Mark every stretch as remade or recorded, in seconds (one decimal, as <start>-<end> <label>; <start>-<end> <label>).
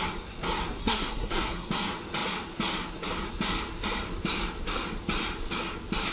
0.0-0.8 recorded; 0.8-1.7 remade; 1.7-6.1 recorded